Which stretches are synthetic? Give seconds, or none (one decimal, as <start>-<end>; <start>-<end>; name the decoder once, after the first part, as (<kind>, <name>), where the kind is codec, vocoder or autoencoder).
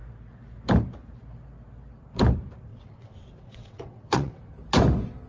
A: 2.7-4.4 (vocoder, WaveNeXt)